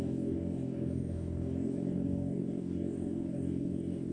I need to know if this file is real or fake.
fake